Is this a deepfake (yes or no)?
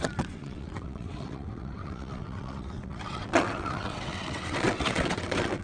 yes